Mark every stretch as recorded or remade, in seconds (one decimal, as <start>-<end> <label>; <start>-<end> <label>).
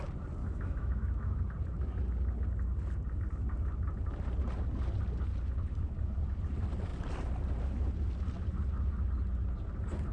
0.0-0.4 recorded; 0.4-1.4 remade; 1.4-10.1 recorded